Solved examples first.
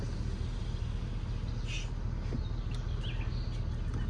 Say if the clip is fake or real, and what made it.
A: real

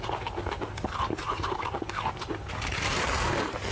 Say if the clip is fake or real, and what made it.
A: fake, vocoder, BigVGAN v2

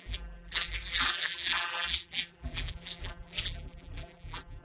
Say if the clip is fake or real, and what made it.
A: fake, vocoder, BigVGAN v2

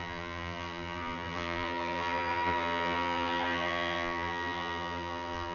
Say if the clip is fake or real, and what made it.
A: fake, vocoder, BigVGAN v2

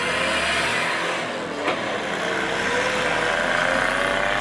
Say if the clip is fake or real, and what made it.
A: real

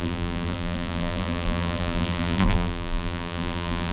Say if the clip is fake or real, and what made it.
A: fake, vocoder, BigVGAN v2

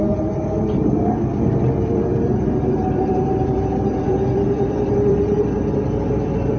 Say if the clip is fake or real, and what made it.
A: fake, vocoder, BigVGAN v2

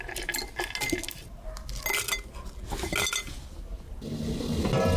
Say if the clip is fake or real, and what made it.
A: real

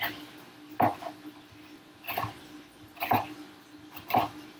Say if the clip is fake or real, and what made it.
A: real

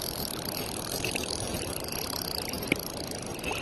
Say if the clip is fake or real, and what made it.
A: fake, vocoder, BigVGAN v2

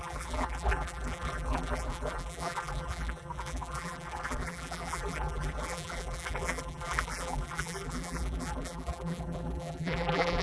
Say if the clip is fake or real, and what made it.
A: fake, vocoder, BigVGAN v2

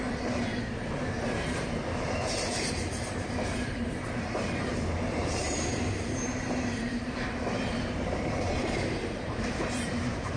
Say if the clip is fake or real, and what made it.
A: fake, vocoder, BigVGAN v2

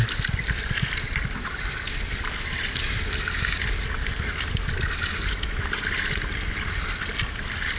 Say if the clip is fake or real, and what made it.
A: real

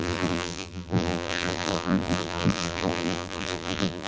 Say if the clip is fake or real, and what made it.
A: fake, vocoder, BigVGAN v2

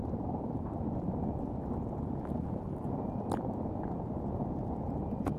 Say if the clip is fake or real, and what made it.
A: real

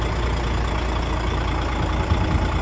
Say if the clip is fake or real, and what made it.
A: real